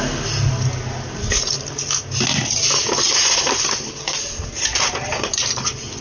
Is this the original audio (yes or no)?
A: yes